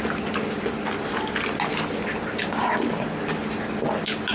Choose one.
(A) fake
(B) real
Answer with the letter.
B